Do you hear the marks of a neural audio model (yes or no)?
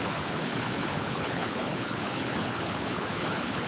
yes